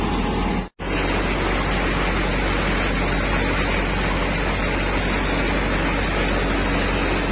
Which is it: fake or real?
real